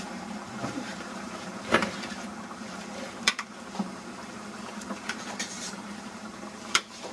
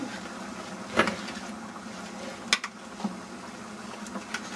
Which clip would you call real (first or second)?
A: second